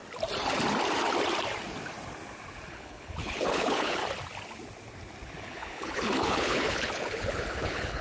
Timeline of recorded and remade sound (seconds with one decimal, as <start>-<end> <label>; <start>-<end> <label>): 0.0-2.7 recorded; 2.7-4.0 remade; 4.0-5.4 recorded; 5.4-8.0 remade